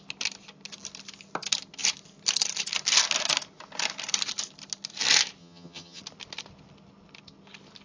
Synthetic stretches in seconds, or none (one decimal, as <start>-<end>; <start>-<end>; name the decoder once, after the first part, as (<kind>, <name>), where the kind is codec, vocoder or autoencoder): 5.4-6.0 (vocoder, HiFi-GAN)